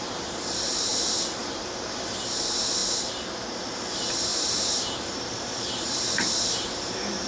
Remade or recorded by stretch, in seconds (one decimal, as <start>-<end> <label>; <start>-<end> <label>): 0.0-0.9 remade; 0.9-1.4 recorded; 1.4-2.8 remade; 2.8-3.9 recorded; 3.9-7.3 remade